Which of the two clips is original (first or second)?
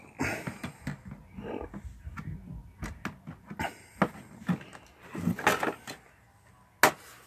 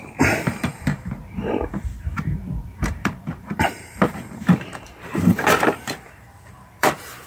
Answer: first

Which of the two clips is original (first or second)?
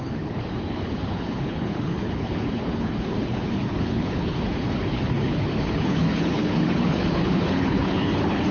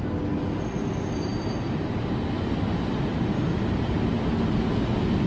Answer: second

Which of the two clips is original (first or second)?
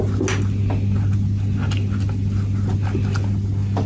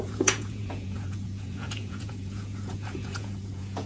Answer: first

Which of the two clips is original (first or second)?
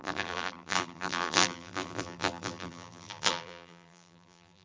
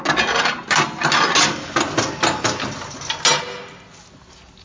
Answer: second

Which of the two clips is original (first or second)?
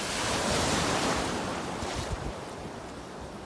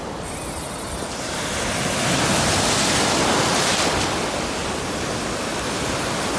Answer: second